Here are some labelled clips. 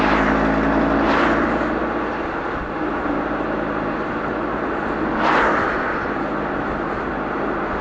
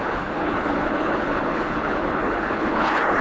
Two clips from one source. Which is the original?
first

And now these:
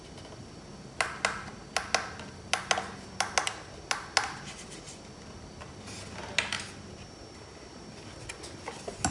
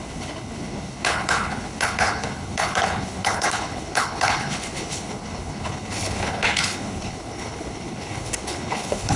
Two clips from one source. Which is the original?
first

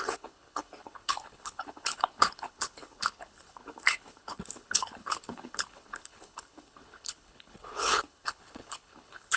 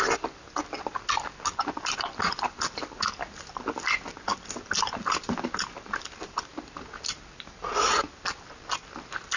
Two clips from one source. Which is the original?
second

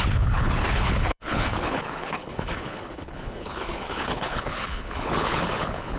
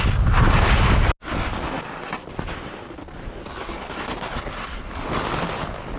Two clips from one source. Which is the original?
second